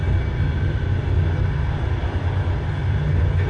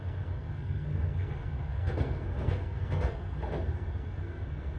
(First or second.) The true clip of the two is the first